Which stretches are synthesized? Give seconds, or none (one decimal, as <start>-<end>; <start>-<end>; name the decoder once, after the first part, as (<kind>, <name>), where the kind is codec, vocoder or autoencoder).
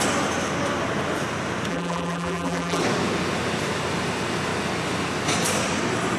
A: 1.7-2.8 (vocoder, BigVGAN v2)